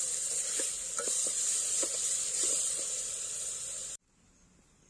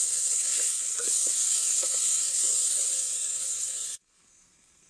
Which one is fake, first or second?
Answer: second